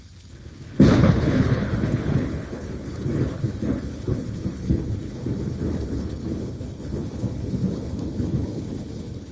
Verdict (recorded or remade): remade